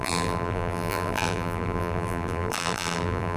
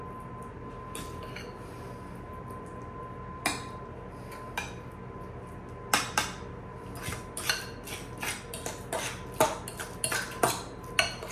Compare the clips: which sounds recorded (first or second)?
second